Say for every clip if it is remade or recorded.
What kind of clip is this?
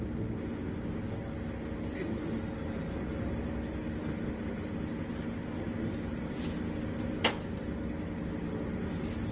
recorded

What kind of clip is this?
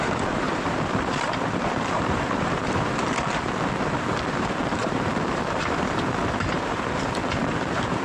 remade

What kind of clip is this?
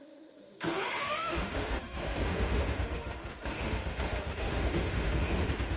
remade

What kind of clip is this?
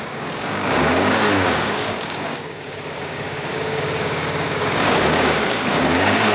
remade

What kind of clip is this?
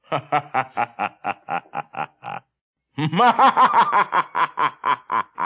recorded